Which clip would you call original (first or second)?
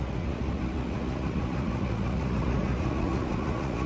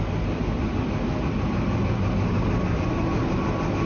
second